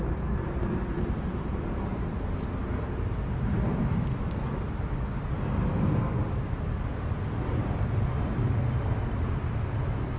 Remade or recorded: recorded